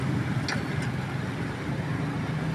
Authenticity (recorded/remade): recorded